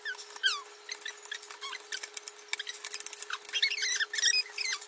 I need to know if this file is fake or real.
real